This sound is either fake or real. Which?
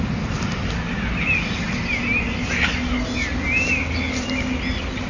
real